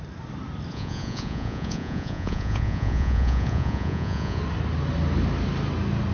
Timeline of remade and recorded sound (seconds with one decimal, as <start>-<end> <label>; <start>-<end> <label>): 0.0-0.7 recorded; 0.7-4.4 remade; 4.4-6.1 recorded